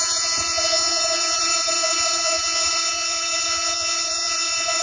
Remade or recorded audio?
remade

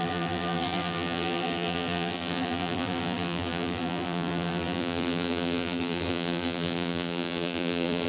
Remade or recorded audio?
remade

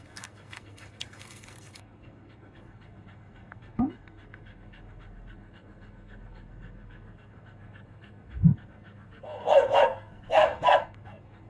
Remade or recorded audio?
remade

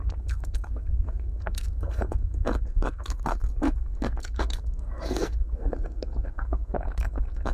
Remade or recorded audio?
remade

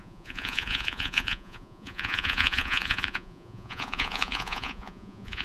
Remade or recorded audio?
remade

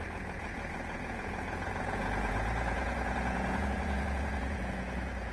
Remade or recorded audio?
remade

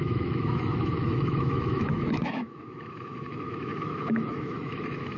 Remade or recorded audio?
remade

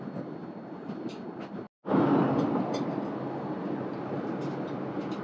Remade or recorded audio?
recorded